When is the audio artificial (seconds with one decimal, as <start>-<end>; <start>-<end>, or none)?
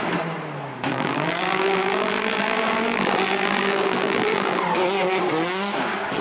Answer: 0.9-4.6